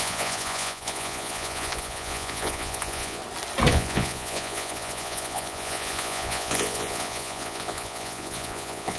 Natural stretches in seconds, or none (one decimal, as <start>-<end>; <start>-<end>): 3.2-3.7